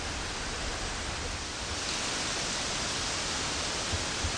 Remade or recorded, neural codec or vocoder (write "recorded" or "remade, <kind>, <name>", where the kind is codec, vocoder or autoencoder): recorded